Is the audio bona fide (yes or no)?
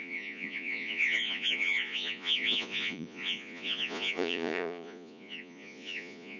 no